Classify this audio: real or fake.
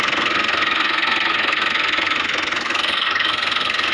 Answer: fake